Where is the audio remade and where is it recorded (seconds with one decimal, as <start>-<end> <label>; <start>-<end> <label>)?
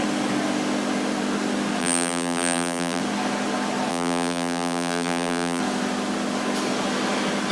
0.0-1.8 recorded; 1.8-3.0 remade; 3.0-3.9 recorded; 3.9-5.6 remade; 5.6-7.5 recorded